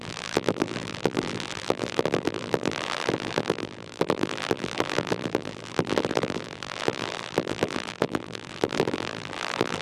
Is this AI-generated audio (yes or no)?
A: yes